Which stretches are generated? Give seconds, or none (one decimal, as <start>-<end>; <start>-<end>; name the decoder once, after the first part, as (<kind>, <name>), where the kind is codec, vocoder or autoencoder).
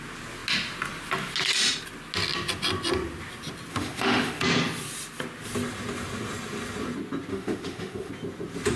3.7-4.4 (autoencoder, DAC-VAE); 7.3-8.1